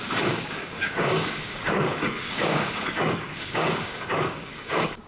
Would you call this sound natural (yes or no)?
no